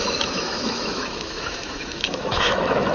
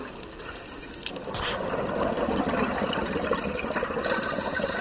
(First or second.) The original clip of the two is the second